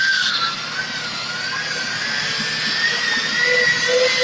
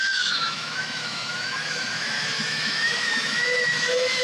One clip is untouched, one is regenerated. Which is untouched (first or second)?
first